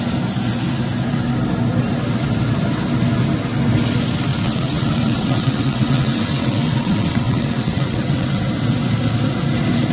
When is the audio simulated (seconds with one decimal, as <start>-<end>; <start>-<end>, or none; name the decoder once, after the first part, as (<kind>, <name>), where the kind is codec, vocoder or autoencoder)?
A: 4.3-8.4 (vocoder, WaveNeXt)